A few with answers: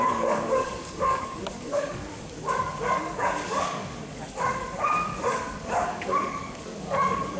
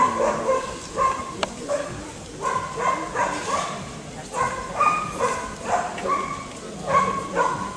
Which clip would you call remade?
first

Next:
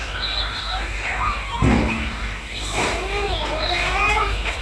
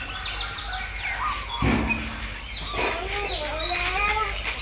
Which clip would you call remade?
first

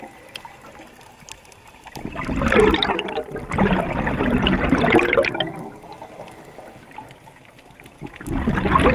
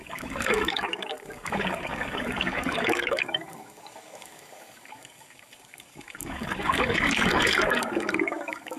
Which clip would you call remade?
second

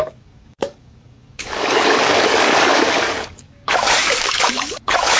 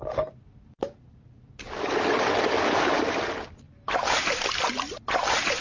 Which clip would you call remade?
first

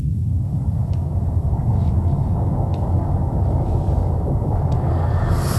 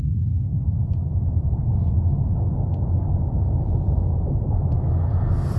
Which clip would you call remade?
first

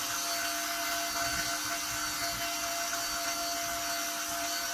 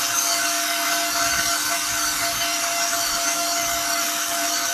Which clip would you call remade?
second